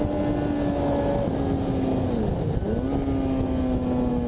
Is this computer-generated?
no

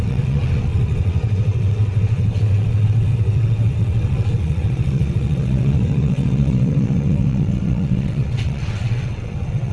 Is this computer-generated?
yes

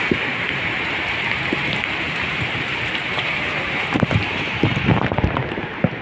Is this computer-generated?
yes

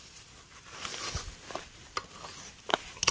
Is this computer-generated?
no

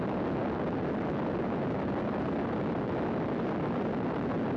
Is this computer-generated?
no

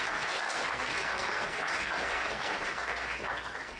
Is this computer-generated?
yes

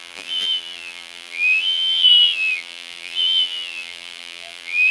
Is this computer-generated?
yes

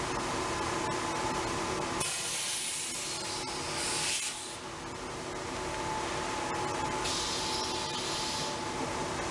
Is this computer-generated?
no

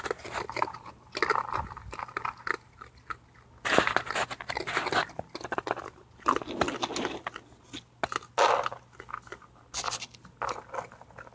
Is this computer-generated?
no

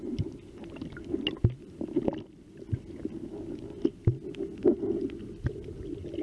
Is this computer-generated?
no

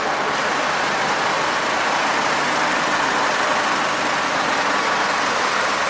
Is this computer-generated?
no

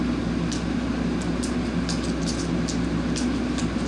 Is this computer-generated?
no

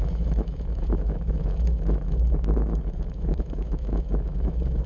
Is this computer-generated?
yes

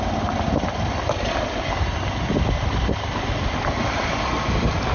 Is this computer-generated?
no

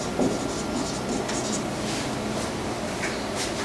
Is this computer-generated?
no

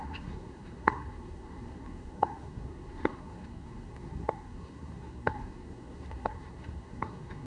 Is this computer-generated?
yes